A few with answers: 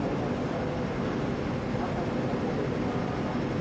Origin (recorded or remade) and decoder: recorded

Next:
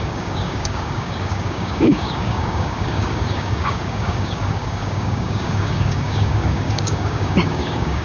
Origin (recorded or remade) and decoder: remade, codec, DAC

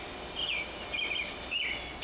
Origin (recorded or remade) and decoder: recorded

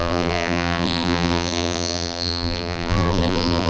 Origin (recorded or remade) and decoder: remade, vocoder, BigVGAN v2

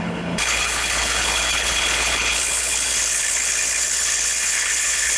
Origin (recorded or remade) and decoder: remade, codec, HILCodec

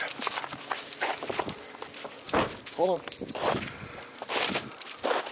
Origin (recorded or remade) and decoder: recorded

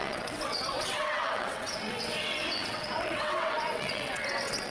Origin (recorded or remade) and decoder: remade, vocoder, WaveNeXt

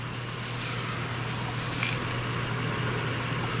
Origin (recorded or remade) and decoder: recorded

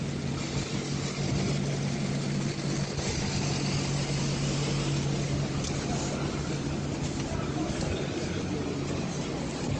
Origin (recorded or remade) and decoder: recorded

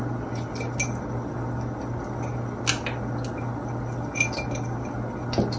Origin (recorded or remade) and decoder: recorded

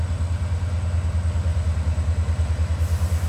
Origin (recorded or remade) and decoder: recorded